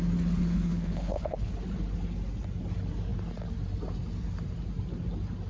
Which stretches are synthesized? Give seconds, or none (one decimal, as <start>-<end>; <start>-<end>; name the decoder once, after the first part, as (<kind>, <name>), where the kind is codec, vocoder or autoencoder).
0.4-1.5 (codec, HILCodec)